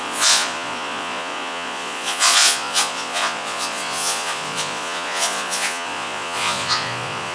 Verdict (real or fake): fake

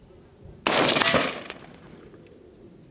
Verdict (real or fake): real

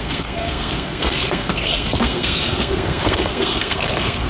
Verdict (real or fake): fake